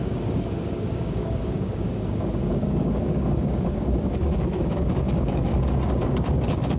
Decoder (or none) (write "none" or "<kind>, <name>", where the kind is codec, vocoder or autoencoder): codec, DAC